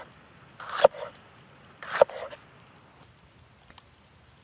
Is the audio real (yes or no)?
yes